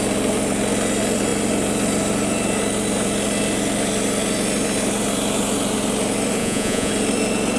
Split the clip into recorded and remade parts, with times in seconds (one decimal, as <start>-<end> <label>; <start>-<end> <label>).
0.0-6.4 recorded; 6.4-6.9 remade; 6.9-7.6 recorded